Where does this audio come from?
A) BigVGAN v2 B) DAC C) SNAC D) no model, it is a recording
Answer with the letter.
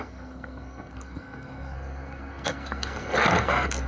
C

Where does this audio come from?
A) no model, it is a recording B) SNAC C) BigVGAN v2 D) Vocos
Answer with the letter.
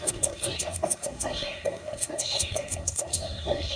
B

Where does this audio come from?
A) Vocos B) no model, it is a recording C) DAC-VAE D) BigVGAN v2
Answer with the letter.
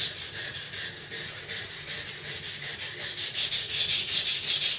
B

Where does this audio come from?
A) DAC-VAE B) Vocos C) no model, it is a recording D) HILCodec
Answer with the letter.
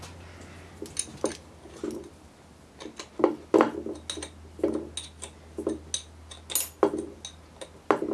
C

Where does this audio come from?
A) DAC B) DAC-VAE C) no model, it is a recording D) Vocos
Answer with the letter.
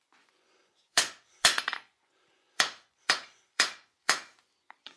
D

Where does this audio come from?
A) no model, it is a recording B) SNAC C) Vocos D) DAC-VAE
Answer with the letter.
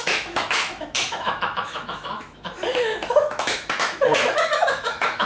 D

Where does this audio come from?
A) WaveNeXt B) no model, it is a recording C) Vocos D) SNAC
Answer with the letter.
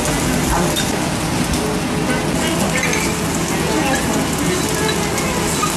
B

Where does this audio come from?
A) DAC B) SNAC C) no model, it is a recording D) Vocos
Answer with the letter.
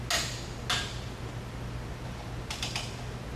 C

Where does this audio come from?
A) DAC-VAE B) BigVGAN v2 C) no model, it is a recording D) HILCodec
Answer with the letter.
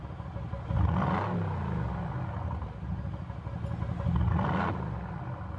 C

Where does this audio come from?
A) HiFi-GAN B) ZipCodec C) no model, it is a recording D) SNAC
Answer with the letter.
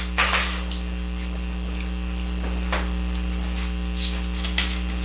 C